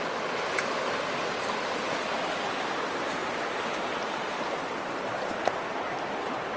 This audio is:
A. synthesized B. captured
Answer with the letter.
B